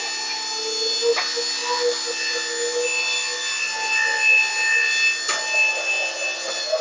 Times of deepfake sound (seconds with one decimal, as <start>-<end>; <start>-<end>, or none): none